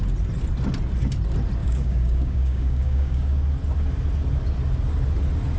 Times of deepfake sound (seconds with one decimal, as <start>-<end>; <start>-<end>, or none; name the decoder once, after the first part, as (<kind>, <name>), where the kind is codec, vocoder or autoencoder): 1.6-3.4 (codec, DAC)